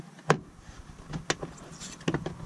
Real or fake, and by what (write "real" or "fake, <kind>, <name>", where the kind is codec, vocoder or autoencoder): real